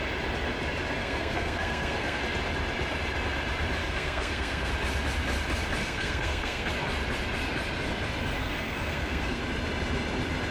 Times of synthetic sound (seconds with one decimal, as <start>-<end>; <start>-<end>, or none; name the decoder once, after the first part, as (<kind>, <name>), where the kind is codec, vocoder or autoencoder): 1.0-2.2 (codec, SNAC); 3.8-4.7; 5.8-6.7; 8.4-9.4